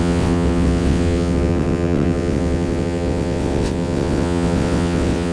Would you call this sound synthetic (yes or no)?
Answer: yes